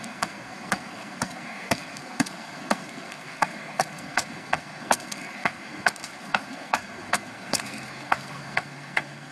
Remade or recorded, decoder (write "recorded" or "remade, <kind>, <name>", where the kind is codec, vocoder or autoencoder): remade, codec, SNAC